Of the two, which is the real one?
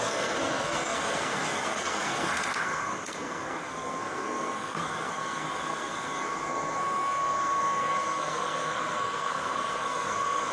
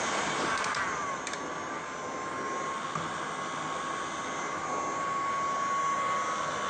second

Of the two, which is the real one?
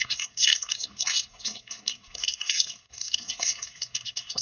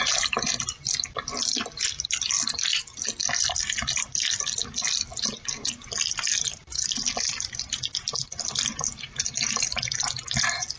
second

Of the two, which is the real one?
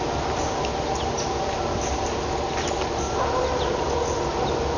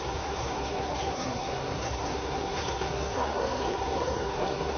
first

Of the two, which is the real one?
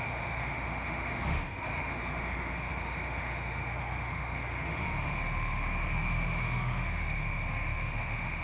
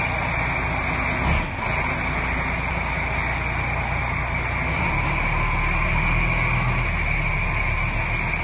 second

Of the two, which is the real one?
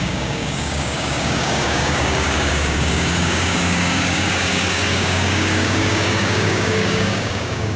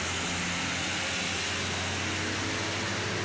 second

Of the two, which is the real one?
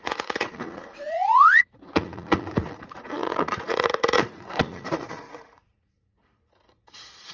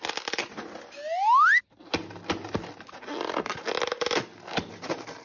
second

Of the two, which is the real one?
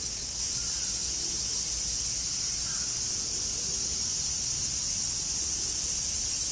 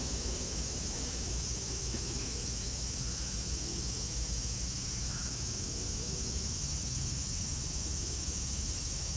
first